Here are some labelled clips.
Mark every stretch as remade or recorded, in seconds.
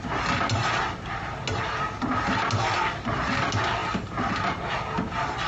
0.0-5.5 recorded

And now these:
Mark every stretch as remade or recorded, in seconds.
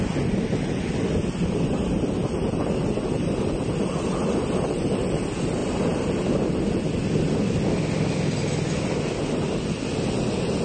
0.0-10.6 recorded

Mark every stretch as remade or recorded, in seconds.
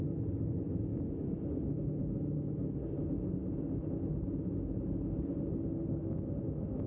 0.0-6.9 recorded